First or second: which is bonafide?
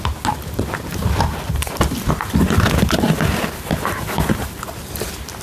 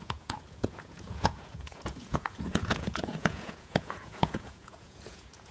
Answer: first